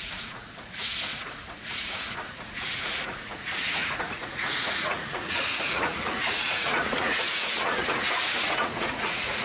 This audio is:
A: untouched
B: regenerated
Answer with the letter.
B